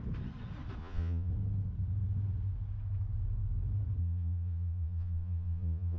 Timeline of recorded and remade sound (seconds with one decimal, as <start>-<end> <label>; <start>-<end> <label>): 0.0-0.8 recorded; 0.8-1.3 remade; 1.3-4.0 recorded; 4.0-6.0 remade